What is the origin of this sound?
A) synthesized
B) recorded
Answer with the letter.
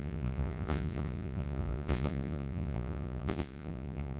A